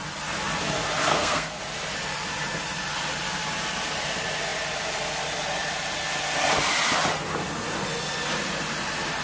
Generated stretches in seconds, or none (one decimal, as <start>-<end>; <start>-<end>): 1.1-1.6